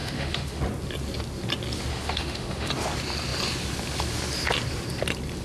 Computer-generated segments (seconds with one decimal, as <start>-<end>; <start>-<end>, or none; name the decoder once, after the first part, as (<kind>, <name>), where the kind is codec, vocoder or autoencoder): 0.0-0.6 (autoencoder, DAC-VAE); 1.9-2.7